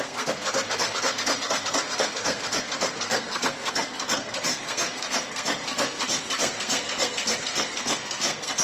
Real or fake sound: fake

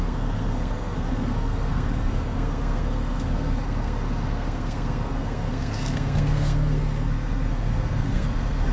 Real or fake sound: fake